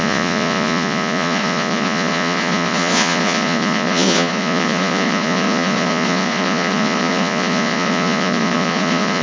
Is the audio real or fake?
fake